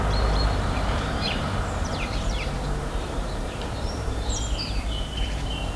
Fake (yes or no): yes